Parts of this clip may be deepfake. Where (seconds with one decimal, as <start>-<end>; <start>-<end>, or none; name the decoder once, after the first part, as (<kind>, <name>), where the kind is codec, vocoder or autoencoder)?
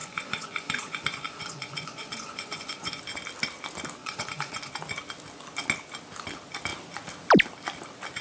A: 0.0-3.0 (vocoder, Vocos); 4.0-4.7